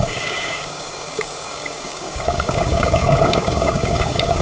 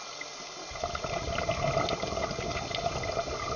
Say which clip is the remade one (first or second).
first